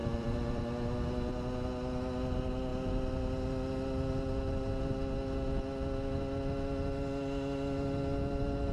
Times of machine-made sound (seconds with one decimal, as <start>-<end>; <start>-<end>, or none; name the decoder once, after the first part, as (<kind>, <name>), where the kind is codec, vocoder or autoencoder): 0.0-0.6 (vocoder, BigVGAN v2)